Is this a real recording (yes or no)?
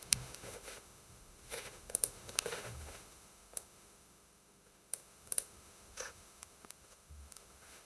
no